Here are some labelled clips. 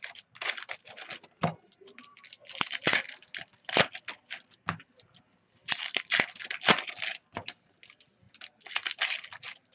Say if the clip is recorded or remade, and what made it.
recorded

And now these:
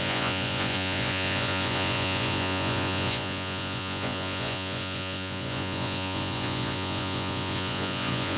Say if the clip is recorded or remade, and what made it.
remade, vocoder, Vocos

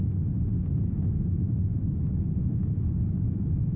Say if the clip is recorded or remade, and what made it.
recorded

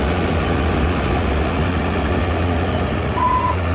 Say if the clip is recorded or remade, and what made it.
remade, vocoder, Vocos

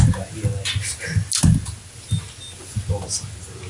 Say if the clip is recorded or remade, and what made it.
recorded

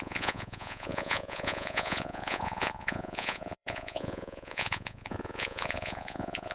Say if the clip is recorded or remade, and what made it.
remade, vocoder, Vocos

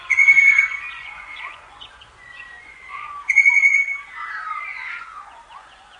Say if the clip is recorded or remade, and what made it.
remade, vocoder, Vocos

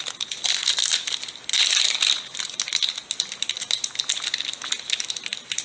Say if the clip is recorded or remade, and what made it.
recorded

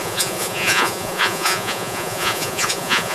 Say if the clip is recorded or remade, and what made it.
remade, vocoder, Vocos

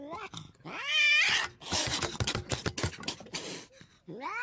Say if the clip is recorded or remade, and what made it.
recorded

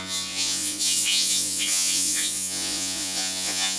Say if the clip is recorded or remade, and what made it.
remade, vocoder, Vocos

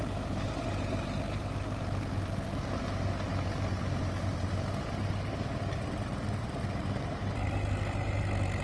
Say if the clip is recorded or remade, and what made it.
recorded